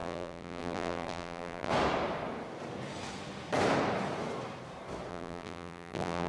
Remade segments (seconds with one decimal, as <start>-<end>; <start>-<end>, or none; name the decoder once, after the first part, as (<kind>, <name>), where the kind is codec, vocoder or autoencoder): 0.0-1.7 (vocoder, BigVGAN v2); 5.1-6.3

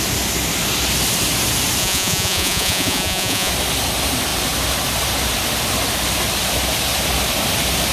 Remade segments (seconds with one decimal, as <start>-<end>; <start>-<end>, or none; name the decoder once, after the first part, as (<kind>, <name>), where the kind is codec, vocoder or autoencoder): 1.8-3.5 (vocoder, Vocos)